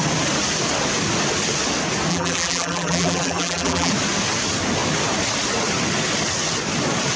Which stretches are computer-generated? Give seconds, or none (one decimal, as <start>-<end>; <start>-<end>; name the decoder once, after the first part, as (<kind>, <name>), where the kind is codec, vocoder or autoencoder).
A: 2.1-3.9 (vocoder, BigVGAN v2)